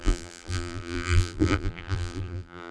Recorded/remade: remade